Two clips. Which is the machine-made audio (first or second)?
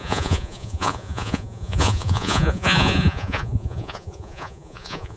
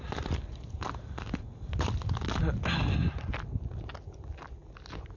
first